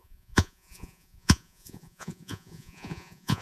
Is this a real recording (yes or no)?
no